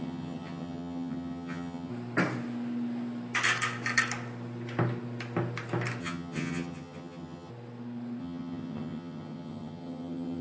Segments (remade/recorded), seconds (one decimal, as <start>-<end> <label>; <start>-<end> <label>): 0.0-1.9 remade; 1.9-6.0 recorded; 6.0-7.5 remade; 7.5-8.2 recorded; 8.2-10.4 remade